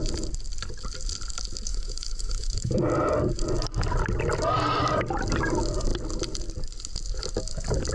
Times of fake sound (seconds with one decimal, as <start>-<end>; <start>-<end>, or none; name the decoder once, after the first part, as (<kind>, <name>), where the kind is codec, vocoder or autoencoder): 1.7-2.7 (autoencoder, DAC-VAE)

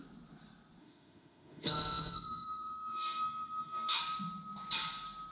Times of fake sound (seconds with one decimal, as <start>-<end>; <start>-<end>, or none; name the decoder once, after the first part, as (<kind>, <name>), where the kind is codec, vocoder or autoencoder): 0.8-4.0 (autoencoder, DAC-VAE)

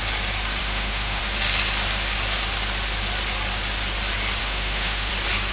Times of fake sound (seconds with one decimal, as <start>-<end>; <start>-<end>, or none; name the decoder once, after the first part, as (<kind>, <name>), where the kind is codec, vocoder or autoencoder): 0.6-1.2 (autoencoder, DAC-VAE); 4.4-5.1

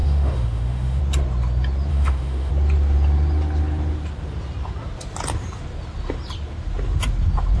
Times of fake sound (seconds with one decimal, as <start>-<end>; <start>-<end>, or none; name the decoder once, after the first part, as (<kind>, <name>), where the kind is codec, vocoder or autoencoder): 0.0-1.0 (autoencoder, DAC-VAE); 1.9-2.5

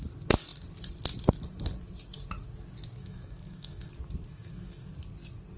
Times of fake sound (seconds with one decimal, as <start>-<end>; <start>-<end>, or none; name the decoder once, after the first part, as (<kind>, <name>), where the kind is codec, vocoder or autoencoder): 3.0-3.9 (autoencoder, DAC-VAE); 4.3-4.9

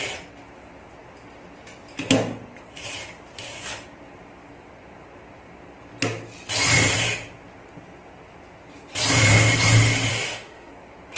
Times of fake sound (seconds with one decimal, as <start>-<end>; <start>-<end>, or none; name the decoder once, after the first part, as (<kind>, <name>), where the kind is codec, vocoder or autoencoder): 10.1-10.7 (autoencoder, DAC-VAE)

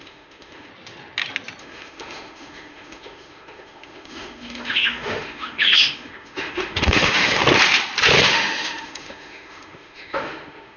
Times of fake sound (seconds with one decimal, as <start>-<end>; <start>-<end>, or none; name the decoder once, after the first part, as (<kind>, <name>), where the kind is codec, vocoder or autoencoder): 0.0-0.7 (autoencoder, DAC-VAE); 1.6-7.4; 8.3-10.8

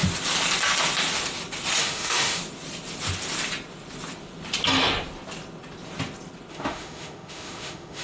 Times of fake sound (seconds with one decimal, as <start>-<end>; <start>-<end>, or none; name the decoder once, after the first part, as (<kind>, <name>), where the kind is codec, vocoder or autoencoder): 1.8-2.4 (autoencoder, DAC-VAE); 6.5-8.0